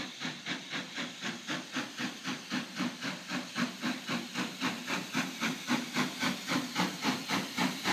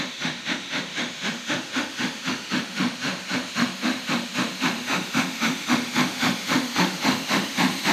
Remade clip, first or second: second